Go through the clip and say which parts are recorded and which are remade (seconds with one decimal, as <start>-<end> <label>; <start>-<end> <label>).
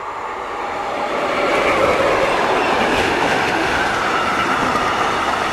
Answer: 0.0-3.0 recorded; 3.0-3.8 remade; 3.8-5.5 recorded